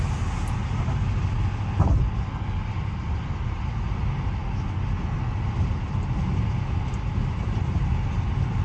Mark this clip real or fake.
real